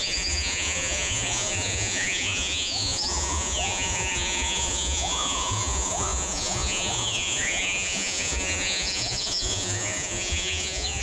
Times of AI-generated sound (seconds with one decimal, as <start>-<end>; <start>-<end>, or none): 0.0-11.0